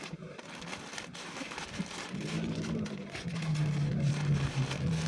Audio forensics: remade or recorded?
recorded